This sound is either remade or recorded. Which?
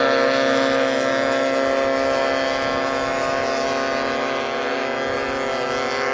recorded